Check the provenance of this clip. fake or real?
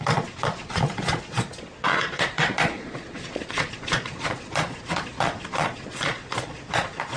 fake